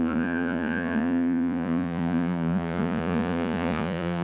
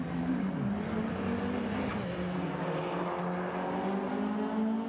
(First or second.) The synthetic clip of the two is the first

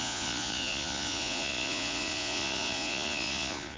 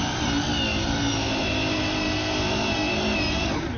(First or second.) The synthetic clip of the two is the first